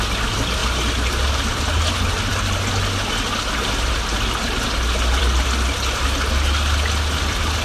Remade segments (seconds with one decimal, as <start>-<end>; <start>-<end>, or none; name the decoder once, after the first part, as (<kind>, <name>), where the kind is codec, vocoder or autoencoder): none